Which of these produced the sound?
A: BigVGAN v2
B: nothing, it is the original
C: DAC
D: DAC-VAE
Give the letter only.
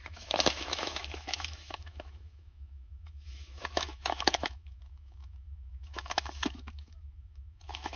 D